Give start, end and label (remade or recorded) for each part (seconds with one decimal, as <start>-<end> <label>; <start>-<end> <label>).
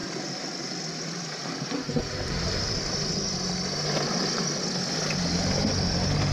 0.0-3.1 remade; 3.1-6.3 recorded